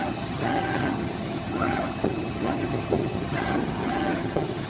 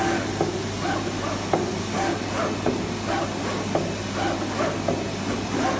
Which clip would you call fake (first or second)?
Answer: first